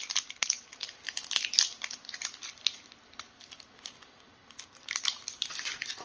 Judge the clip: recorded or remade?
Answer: recorded